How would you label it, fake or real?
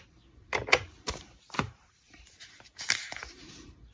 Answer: fake